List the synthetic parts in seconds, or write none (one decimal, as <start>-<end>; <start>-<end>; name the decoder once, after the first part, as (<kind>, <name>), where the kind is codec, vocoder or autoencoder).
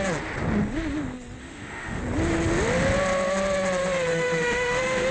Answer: 1.4-2.0 (autoencoder, DAC-VAE); 4.1-5.1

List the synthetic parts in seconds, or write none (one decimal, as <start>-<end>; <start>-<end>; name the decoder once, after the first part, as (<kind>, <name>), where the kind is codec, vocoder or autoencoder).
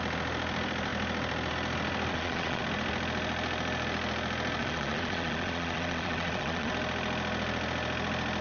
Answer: 2.1-2.6 (vocoder, Vocos); 4.6-6.7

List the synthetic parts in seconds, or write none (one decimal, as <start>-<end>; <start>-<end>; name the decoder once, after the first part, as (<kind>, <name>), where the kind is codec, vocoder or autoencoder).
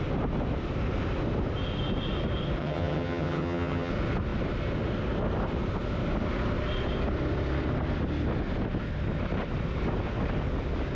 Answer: 2.6-3.9 (vocoder, HiFi-GAN)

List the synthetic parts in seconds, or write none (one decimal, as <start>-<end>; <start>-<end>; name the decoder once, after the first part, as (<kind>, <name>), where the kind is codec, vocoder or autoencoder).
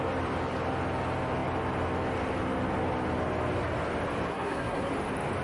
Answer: 4.3-4.9 (codec, SNAC)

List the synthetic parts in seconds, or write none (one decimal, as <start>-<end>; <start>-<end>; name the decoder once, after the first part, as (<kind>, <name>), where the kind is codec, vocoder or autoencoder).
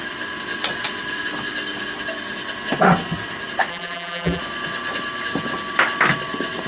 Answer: 3.7-4.4 (vocoder, BigVGAN v2)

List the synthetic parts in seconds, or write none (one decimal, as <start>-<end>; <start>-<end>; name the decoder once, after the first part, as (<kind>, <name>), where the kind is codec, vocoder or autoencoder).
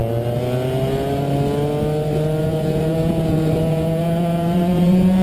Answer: 2.4-5.2 (vocoder, Vocos)